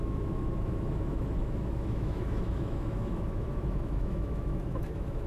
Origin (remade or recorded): remade